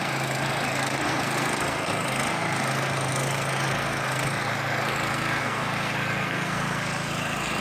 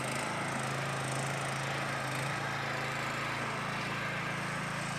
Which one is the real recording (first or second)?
second